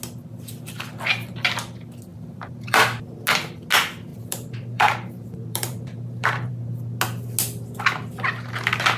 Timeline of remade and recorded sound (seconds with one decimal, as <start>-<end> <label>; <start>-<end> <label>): 0.0-2.1 recorded; 2.1-2.8 remade; 2.8-4.1 recorded; 4.1-6.5 remade; 6.5-9.0 recorded